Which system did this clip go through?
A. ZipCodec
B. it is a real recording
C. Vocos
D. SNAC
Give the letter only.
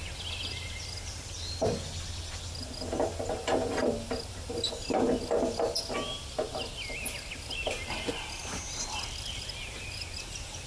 B